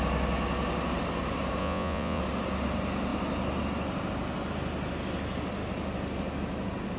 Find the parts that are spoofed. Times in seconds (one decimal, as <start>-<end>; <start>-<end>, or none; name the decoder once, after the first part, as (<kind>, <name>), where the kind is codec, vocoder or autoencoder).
1.6-2.2 (vocoder, Vocos)